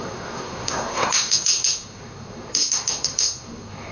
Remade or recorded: remade